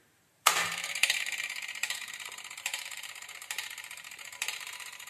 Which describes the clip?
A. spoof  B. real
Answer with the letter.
A